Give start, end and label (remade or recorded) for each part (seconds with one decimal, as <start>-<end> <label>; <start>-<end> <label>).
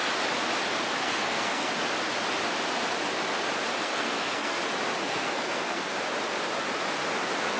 0.0-1.0 recorded; 1.0-1.7 remade; 1.7-3.8 recorded; 3.8-4.6 remade; 4.6-5.0 recorded; 5.0-5.8 remade; 5.8-7.6 recorded